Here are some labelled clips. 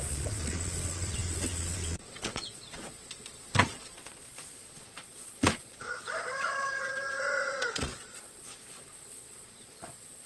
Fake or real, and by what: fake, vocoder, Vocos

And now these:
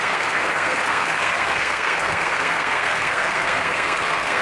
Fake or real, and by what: fake, codec, SNAC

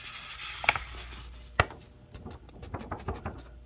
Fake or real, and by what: real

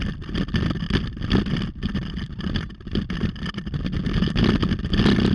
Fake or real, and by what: real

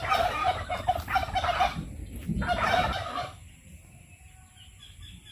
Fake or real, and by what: real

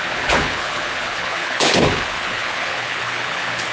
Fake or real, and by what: fake, codec, HILCodec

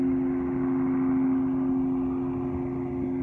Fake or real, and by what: real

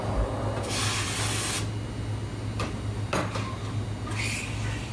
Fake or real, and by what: real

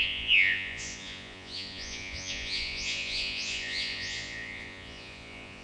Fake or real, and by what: fake, vocoder, Vocos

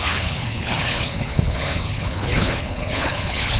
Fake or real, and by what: fake, codec, HILCodec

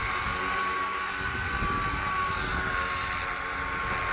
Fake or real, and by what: real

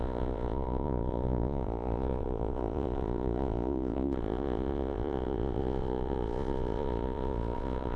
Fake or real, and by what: fake, vocoder, Vocos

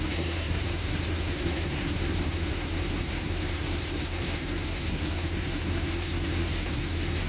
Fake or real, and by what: fake, codec, SNAC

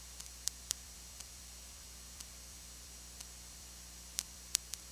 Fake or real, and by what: fake, vocoder, BigVGAN v2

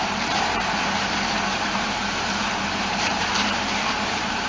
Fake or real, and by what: fake, vocoder, BigVGAN v2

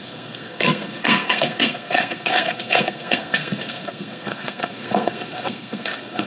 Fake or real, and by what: fake, codec, SNAC